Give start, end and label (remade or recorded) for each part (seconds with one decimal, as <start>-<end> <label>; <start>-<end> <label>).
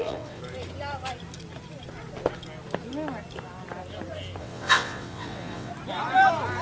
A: 0.0-0.4 remade; 0.4-4.4 recorded; 4.4-5.7 remade; 5.7-6.6 recorded